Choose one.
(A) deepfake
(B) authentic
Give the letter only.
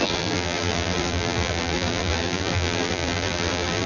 A